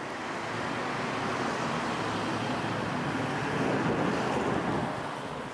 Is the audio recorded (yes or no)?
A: yes